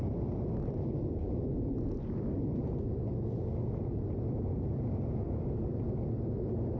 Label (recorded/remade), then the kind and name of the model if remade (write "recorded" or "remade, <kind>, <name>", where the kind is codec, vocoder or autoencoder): recorded